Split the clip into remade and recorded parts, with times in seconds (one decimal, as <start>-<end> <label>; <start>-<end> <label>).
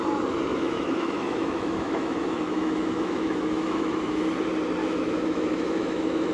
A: 0.0-0.5 recorded; 0.5-4.3 remade; 4.3-4.8 recorded; 4.8-6.3 remade